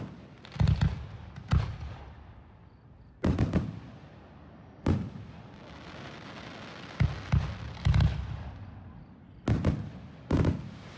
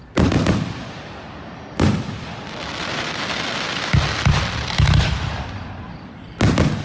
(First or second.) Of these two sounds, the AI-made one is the second